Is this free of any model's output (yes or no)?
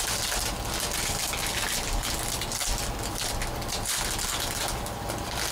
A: yes